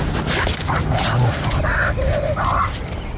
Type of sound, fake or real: real